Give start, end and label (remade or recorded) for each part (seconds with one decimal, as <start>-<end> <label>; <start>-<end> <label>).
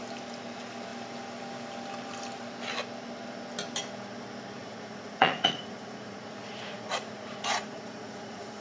0.0-4.6 recorded; 4.6-8.6 remade